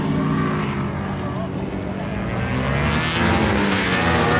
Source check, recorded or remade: recorded